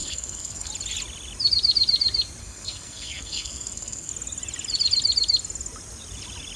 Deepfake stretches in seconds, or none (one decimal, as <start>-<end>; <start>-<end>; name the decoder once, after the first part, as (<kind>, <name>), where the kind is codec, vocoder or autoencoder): 0.0-0.7 (codec, SNAC); 2.4-4.1